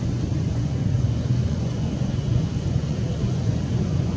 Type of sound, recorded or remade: remade